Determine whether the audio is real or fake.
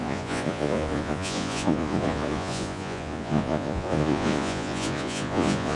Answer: fake